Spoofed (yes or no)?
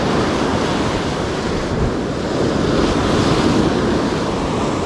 no